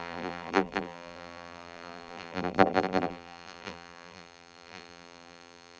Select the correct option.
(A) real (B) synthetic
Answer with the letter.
B